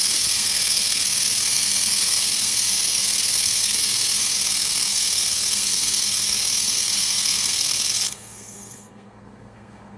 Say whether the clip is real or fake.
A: fake